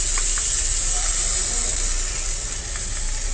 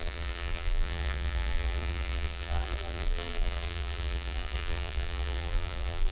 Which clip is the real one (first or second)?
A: first